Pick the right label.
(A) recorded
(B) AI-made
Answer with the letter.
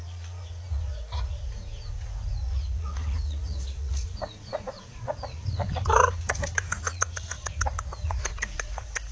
B